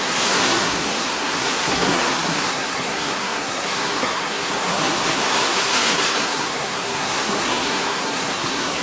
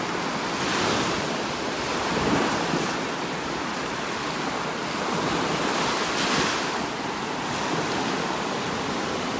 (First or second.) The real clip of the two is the second